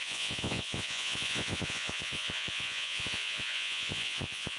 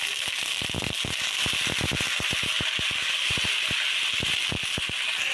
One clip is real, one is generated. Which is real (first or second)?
second